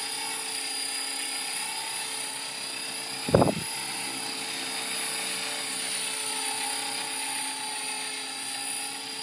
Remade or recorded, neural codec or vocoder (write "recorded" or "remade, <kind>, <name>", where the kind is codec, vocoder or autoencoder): recorded